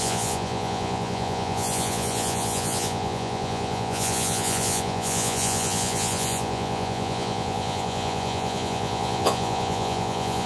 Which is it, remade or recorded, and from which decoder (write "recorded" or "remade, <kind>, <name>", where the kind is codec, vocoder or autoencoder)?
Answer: remade, vocoder, Vocos